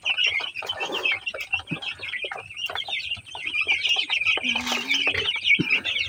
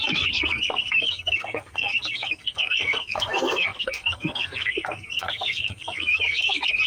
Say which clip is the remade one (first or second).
second